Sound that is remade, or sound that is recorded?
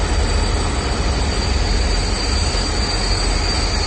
recorded